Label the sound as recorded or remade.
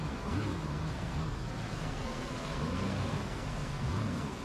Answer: remade